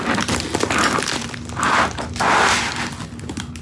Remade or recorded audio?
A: recorded